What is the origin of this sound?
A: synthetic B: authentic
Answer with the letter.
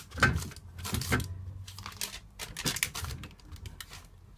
B